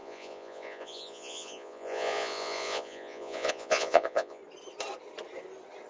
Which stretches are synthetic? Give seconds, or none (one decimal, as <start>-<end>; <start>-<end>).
0.0-4.4